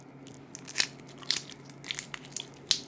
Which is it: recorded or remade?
recorded